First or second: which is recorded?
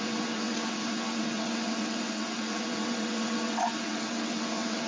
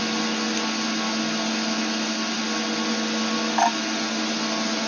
second